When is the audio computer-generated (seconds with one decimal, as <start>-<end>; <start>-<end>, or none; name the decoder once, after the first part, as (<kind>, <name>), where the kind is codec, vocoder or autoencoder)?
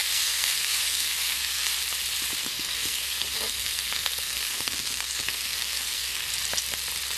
0.0-1.7 (codec, SNAC); 2.4-6.3